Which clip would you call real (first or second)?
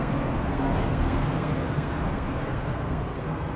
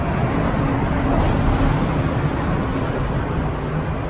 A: second